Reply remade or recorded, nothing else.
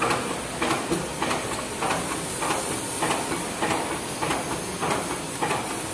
recorded